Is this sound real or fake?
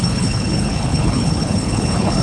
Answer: fake